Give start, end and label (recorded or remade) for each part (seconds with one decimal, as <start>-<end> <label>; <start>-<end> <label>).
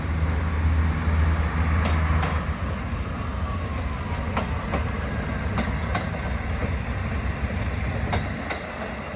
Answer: 0.0-9.2 recorded